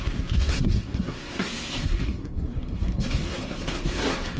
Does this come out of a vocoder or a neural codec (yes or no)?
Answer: yes